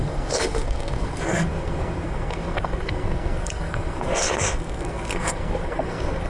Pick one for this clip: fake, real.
fake